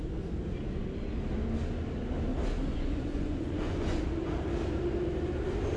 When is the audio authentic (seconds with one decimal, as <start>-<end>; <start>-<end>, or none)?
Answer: 0.0-2.7; 4.0-5.8